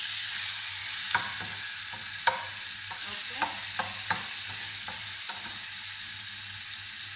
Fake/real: real